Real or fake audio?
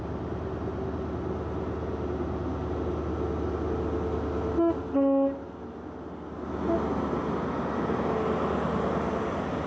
real